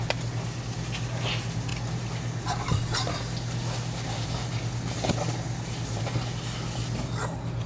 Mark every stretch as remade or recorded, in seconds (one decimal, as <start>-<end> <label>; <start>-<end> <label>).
0.0-7.7 recorded